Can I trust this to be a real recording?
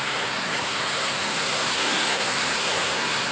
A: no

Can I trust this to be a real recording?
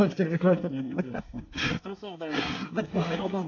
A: no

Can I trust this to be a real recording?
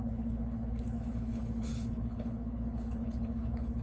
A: no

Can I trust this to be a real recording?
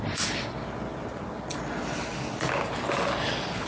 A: yes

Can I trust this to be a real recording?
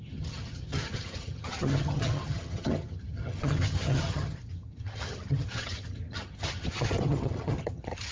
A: no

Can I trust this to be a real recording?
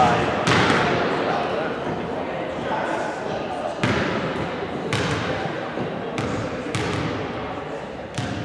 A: yes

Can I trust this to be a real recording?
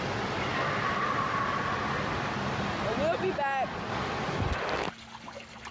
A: yes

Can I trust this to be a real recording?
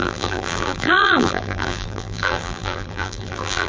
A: no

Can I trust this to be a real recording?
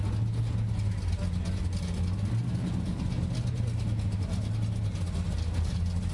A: yes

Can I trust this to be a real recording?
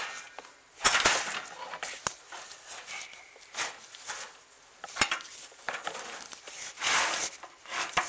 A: yes